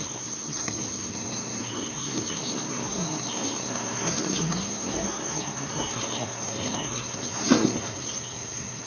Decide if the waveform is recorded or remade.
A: remade